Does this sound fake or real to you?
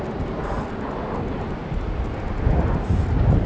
real